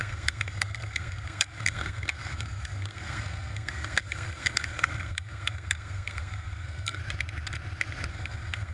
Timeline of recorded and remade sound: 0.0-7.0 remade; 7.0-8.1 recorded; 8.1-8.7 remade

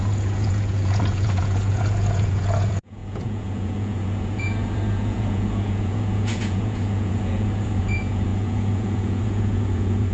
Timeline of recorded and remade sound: 0.0-10.1 remade